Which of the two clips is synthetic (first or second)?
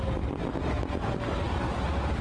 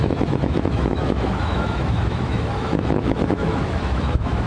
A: second